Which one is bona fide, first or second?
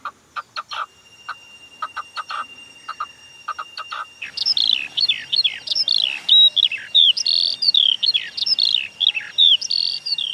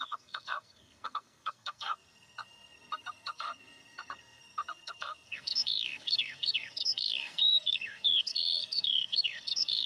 first